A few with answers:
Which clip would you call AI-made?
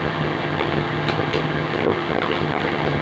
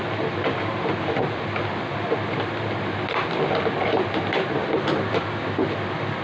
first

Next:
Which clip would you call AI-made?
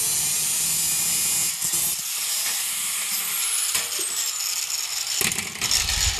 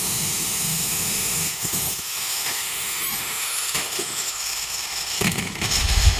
second